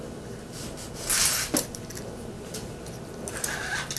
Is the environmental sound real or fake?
real